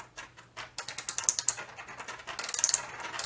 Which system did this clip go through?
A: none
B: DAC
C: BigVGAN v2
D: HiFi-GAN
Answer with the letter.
A